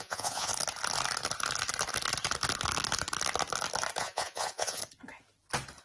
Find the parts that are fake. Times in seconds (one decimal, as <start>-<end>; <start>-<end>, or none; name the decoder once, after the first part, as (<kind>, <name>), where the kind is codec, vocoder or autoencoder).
0.0-0.5 (vocoder, Vocos); 4.0-4.8